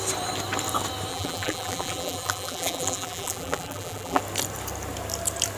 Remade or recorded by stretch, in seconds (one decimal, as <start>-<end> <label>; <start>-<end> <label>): 0.0-1.1 recorded; 1.1-4.2 remade; 4.2-5.6 recorded